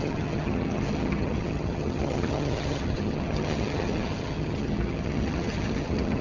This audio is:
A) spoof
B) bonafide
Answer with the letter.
A